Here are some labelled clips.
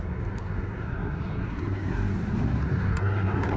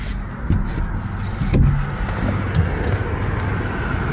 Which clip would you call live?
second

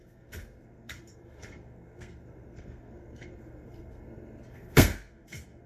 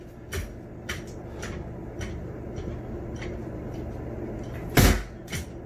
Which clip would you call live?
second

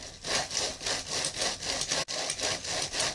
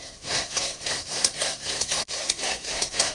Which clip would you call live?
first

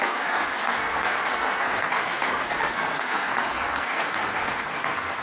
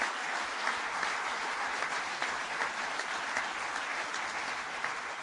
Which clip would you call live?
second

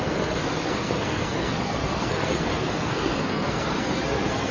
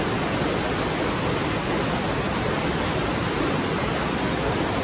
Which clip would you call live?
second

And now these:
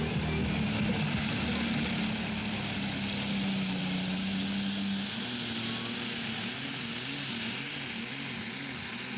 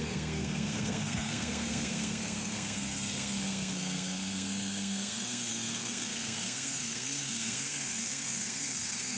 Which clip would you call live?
first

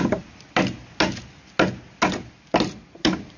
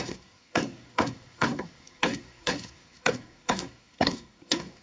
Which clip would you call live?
first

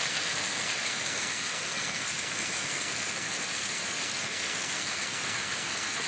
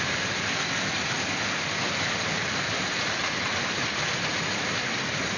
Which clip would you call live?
second